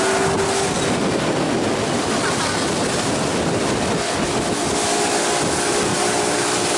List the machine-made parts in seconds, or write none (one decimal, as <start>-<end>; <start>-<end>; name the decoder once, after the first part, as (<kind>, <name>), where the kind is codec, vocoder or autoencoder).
none